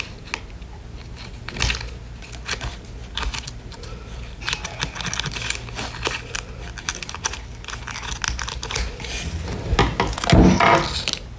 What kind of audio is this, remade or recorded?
recorded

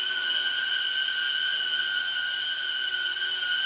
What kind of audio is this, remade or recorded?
recorded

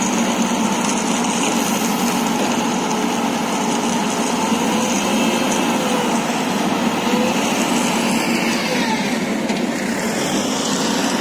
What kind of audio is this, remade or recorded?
recorded